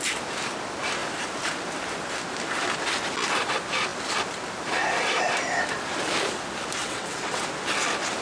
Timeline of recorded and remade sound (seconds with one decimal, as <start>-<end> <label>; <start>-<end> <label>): 0.0-6.8 recorded; 6.8-7.4 remade; 7.4-8.2 recorded